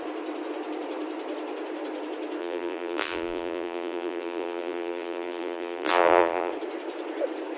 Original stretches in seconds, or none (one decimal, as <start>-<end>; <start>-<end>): 0.0-2.4; 6.5-7.6